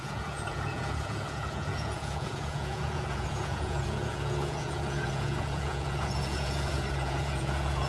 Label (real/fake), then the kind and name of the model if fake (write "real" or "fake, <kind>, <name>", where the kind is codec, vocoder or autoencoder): fake, vocoder, Vocos